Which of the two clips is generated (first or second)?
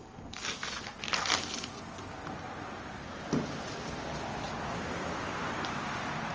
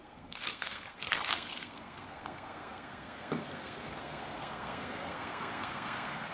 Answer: second